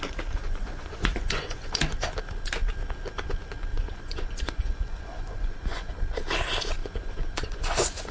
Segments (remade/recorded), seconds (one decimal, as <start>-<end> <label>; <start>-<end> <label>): 0.0-0.4 recorded; 0.4-1.7 remade; 1.7-3.7 recorded; 3.7-5.9 remade; 5.9-6.8 recorded; 6.8-8.1 remade